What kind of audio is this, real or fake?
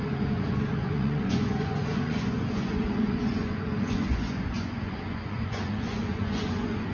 fake